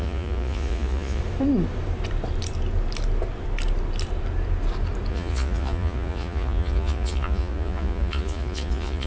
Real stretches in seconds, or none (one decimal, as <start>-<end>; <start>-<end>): 1.2-5.1